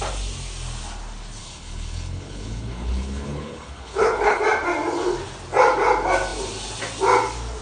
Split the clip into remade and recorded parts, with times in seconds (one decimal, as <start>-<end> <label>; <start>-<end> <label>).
0.0-1.4 recorded; 1.4-4.4 remade; 4.4-7.6 recorded